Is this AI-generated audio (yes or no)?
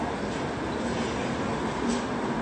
no